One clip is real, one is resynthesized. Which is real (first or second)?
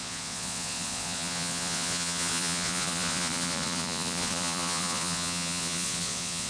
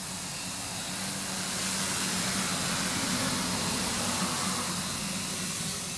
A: second